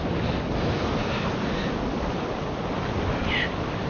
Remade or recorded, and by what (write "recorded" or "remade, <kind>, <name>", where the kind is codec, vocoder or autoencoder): recorded